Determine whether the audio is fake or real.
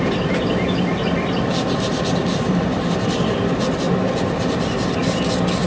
real